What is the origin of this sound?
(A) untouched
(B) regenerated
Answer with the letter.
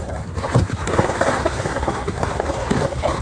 B